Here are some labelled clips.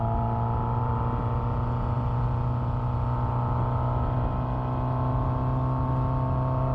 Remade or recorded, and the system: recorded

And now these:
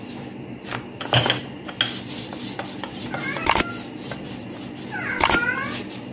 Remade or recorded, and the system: recorded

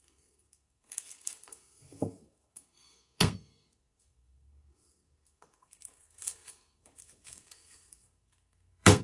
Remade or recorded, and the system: remade, codec, SNAC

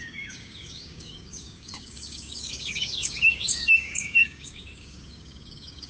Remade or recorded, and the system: remade, codec, DAC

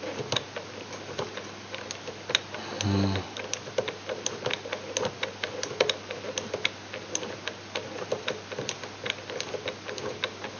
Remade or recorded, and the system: recorded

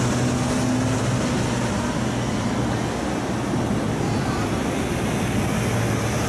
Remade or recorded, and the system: recorded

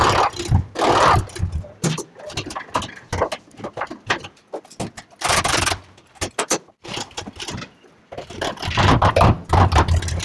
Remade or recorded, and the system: recorded